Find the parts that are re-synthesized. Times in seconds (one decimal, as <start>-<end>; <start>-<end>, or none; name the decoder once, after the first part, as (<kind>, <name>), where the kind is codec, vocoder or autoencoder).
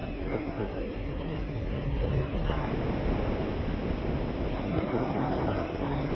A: 0.0-2.7 (codec, SNAC); 4.5-6.1